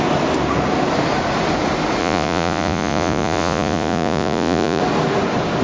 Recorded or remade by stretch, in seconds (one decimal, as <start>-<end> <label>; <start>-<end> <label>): 0.0-2.0 recorded; 2.0-4.8 remade; 4.8-5.6 recorded

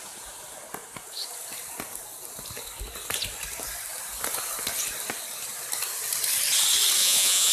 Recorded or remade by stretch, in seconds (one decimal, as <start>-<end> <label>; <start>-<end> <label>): 0.0-7.0 recorded; 7.0-7.5 remade

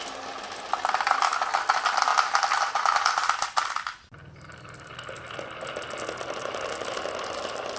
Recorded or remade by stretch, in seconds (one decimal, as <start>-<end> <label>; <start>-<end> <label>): 0.0-7.8 recorded